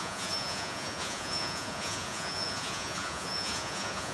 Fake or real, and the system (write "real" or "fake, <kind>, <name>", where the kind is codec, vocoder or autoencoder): fake, vocoder, Vocos